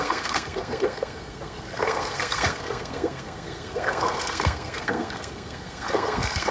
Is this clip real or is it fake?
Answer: fake